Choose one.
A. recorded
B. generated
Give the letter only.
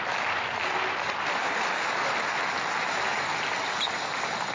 A